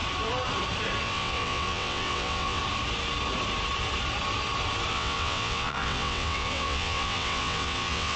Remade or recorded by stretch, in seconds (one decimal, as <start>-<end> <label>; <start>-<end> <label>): 0.0-1.0 recorded; 1.0-2.6 remade; 2.6-4.9 recorded; 4.9-8.2 remade